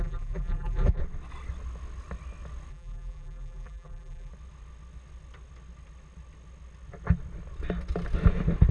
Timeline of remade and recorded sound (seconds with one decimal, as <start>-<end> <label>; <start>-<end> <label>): 0.0-1.0 remade; 1.0-2.7 recorded; 2.7-4.3 remade; 4.3-8.7 recorded